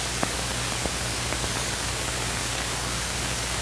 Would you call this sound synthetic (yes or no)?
yes